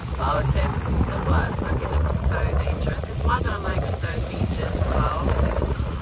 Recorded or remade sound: remade